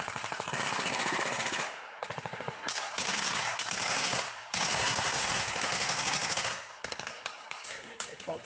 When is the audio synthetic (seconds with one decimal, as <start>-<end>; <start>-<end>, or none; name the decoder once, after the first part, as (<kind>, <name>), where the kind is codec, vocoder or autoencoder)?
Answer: 0.0-8.4 (codec, SNAC)

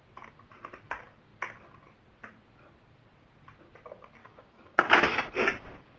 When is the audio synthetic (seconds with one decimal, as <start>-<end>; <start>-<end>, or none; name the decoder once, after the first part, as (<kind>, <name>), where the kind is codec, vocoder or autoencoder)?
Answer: 4.2-5.3 (codec, DAC)

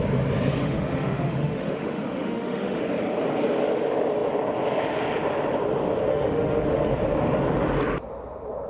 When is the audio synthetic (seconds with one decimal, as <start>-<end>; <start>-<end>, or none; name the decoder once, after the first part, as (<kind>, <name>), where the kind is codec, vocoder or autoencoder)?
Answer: 0.6-2.8 (autoencoder, DAC-VAE); 6.1-6.9

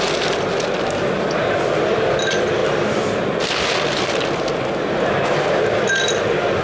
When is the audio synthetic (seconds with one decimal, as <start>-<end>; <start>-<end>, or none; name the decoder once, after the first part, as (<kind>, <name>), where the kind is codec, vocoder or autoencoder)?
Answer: none

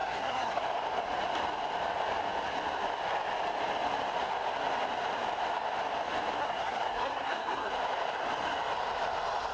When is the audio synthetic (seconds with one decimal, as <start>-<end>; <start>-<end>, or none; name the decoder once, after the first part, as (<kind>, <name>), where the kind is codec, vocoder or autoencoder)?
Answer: 0.0-0.6 (codec, SNAC); 6.4-7.7

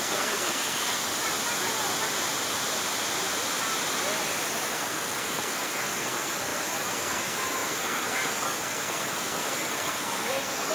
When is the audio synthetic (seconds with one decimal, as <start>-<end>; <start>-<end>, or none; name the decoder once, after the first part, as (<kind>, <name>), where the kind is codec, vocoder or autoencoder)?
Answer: 0.0-1.1 (codec, SNAC); 4.7-10.7